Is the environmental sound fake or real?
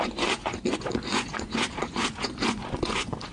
fake